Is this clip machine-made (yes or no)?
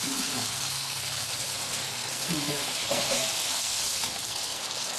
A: yes